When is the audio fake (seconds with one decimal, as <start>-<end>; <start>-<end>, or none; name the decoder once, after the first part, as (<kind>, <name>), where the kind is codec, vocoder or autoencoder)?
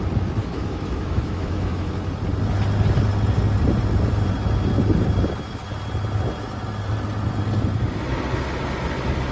0.4-1.9 (autoencoder, DAC-VAE)